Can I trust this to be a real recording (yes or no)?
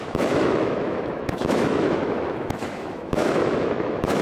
no